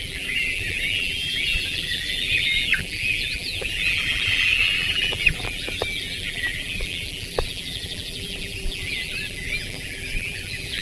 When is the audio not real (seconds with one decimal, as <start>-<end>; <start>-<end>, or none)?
0.0-10.8